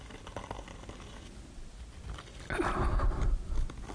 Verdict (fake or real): real